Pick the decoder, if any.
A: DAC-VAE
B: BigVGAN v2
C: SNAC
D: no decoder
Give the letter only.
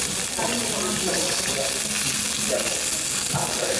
D